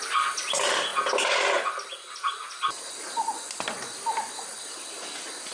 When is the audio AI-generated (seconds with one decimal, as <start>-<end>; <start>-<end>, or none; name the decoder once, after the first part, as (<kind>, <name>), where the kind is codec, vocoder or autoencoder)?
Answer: none